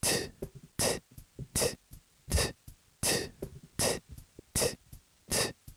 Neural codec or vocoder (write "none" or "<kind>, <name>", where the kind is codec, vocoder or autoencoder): none